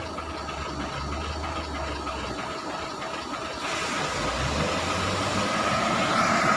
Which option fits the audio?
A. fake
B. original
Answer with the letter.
B